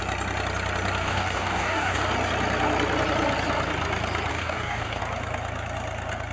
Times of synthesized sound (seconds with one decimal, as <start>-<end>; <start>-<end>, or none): 1.0-2.0; 4.3-5.0